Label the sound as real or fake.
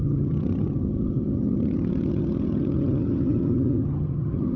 fake